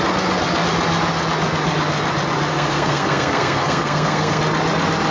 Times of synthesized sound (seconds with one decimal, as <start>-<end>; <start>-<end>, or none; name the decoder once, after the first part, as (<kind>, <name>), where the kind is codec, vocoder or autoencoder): 2.5-4.4 (codec, SNAC)